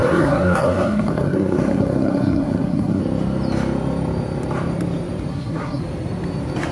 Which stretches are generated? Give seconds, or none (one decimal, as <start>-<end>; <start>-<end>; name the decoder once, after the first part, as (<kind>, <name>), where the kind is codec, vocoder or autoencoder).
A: 0.0-3.0 (codec, SNAC); 5.3-5.8